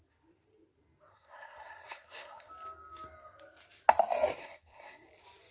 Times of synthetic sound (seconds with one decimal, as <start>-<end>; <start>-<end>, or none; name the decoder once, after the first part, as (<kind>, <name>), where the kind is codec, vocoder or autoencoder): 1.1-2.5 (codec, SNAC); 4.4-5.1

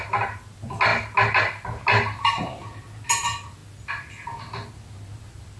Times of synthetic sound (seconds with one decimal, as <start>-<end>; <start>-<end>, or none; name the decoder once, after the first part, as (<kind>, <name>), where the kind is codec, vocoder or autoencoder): none

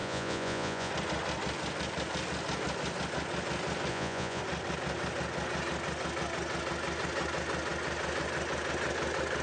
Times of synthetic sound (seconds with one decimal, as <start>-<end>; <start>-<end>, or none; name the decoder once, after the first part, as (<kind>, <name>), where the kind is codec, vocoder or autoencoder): 0.0-0.9 (vocoder, Vocos); 3.9-4.4

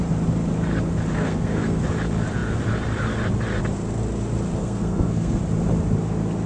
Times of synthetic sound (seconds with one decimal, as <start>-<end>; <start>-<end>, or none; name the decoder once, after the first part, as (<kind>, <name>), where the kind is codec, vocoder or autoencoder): 1.1-1.8 (codec, SNAC); 4.6-5.4

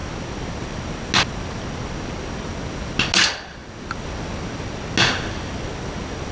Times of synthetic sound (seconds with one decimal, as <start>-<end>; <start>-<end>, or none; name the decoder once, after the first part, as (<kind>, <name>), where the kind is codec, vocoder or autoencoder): none

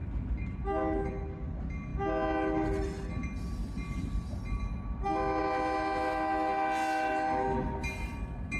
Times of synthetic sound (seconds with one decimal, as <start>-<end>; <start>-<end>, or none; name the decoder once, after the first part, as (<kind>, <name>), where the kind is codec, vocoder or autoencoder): none

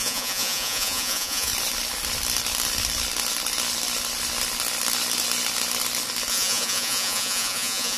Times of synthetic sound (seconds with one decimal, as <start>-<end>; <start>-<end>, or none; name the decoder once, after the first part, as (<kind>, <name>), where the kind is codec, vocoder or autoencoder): 0.0-1.5 (vocoder, Vocos); 6.3-8.0